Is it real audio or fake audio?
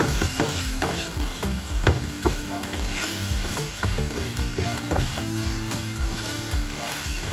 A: fake